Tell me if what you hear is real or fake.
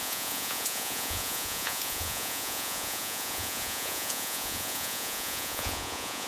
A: fake